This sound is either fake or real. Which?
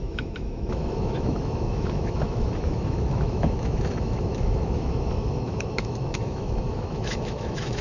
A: fake